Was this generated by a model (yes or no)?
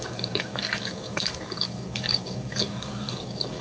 yes